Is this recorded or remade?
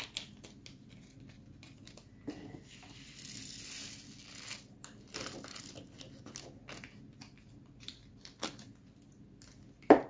recorded